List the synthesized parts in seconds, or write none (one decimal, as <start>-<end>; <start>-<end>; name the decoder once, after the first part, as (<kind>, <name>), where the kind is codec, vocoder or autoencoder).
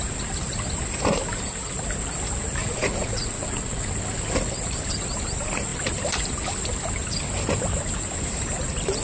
2.6-3.9 (vocoder, Vocos)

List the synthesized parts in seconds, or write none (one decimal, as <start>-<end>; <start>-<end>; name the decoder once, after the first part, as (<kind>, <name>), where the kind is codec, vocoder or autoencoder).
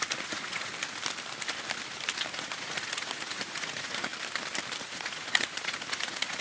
0.0-0.7 (vocoder, Vocos); 2.3-4.1; 4.8-6.4